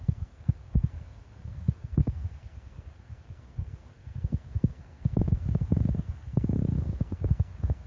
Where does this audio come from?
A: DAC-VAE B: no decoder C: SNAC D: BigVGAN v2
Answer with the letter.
C